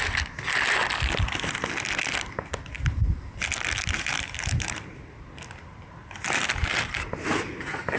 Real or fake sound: real